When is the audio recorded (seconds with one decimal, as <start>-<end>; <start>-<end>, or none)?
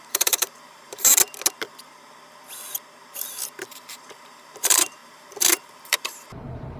1.1-3.7